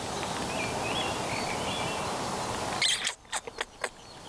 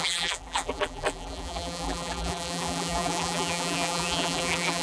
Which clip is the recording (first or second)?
first